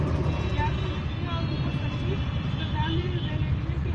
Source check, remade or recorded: recorded